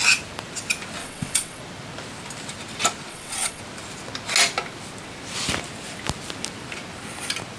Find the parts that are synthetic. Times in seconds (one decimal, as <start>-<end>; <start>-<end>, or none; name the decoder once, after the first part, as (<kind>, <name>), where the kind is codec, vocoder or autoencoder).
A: 1.0-1.6 (vocoder, WaveNeXt); 3.1-3.6

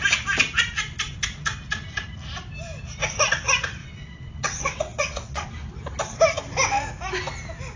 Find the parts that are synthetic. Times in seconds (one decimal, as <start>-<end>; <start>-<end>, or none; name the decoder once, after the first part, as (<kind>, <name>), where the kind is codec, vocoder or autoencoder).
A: 3.8-5.5 (vocoder, WaveNeXt)

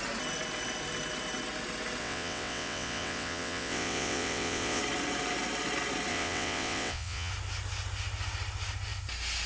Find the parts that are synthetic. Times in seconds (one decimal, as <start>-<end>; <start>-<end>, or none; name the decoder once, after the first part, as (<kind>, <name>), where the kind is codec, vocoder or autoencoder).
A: 2.0-4.8 (vocoder, WaveNeXt); 6.1-7.3

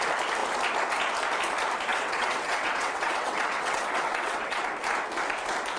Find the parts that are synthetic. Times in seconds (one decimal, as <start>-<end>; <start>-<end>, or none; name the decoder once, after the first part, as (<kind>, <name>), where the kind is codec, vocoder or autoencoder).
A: 1.9-4.6 (vocoder, WaveNeXt)